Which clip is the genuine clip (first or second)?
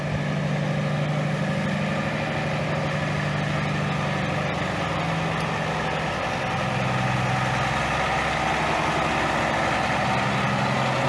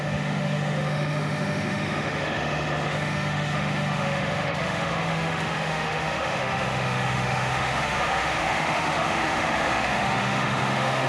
first